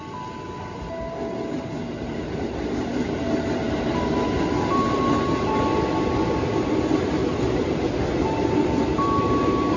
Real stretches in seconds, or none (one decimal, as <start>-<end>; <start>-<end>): 0.0-9.8